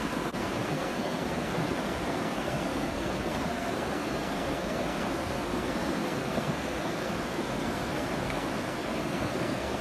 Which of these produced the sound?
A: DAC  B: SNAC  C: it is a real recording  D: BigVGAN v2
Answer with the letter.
B